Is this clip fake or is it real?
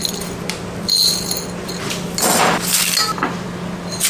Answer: real